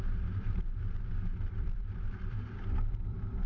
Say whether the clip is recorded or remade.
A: remade